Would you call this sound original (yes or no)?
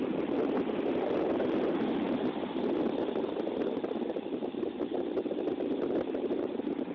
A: yes